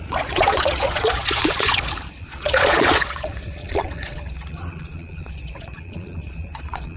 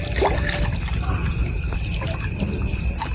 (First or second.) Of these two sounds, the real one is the second